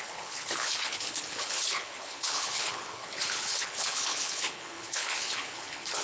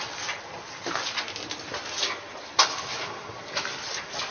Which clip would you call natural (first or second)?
second